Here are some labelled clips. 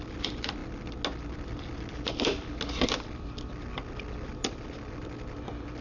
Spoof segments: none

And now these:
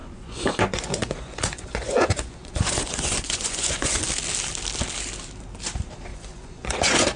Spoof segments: 0.0-4.0 (vocoder, Vocos); 6.1-7.2

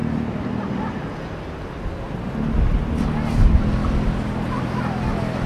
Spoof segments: none

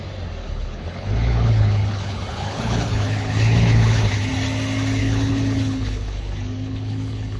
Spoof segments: 0.4-4.3 (codec, HILCodec); 5.0-7.4

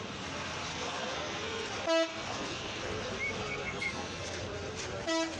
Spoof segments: 0.7-1.7 (codec, SNAC); 2.1-3.0; 3.4-4.4

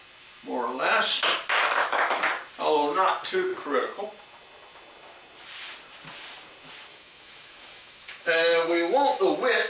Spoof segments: 1.8-2.3 (autoencoder, DAC-VAE); 6.9-9.2